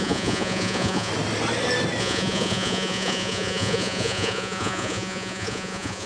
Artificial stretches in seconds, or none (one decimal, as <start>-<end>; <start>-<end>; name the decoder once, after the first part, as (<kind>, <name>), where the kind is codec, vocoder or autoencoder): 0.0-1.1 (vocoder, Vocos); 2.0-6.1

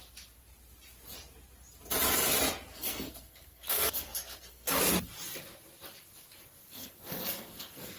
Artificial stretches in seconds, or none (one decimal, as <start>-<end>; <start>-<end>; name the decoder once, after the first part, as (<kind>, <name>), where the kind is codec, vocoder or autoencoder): 2.7-4.8 (codec, SNAC); 6.6-8.0

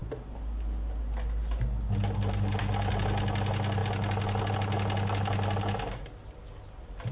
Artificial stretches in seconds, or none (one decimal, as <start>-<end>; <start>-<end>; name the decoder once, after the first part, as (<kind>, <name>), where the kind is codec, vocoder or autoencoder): none

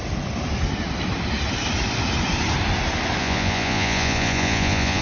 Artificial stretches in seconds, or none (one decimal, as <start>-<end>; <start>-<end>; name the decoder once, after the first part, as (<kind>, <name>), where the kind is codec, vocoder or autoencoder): 3.2-5.0 (vocoder, Vocos)

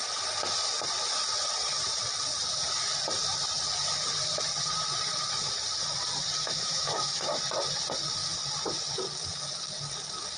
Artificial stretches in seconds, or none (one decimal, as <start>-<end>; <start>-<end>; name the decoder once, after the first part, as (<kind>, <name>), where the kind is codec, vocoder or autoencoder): 6.4-7.4 (autoencoder, DAC-VAE)

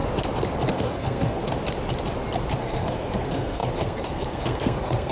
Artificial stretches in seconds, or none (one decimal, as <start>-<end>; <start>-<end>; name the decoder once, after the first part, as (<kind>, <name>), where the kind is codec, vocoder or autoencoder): 0.7-1.4 (codec, SNAC); 2.6-5.1

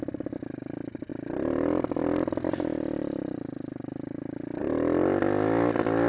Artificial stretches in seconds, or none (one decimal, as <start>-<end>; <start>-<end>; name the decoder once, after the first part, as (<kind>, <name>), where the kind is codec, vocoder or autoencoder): none

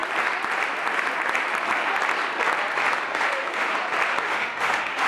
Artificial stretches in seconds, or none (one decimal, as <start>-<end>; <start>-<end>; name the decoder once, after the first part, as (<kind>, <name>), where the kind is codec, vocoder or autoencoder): 3.1-3.7 (autoencoder, DAC-VAE); 4.2-5.1